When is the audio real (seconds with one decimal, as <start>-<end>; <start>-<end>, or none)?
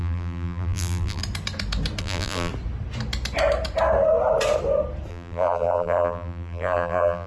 1.2-2.0; 2.5-5.1